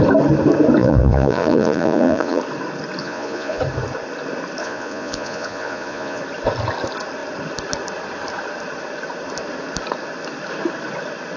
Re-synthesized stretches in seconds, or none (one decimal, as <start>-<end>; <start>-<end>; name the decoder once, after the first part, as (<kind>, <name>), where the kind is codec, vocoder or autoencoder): 0.8-2.4 (vocoder, Vocos); 3.0-3.6; 4.6-6.2